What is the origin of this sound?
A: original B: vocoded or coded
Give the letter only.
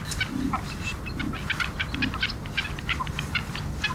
A